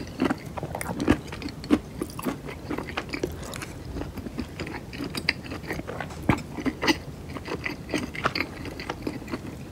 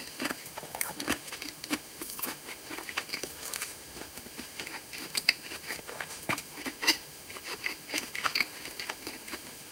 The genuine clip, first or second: first